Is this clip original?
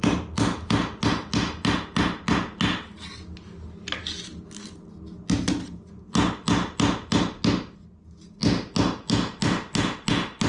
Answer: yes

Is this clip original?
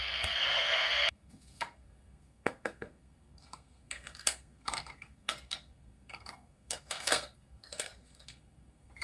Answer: no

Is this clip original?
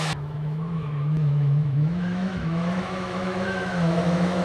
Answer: no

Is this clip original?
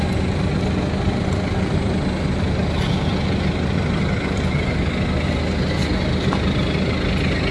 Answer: yes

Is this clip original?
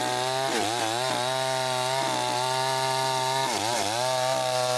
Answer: yes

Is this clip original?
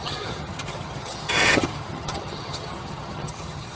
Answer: no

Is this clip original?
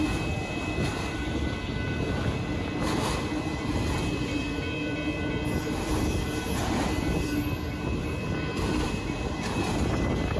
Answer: yes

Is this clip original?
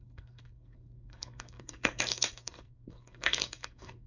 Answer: no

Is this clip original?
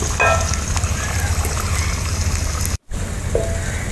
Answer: yes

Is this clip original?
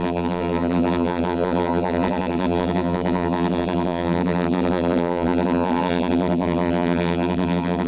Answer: no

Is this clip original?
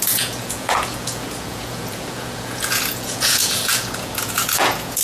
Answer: no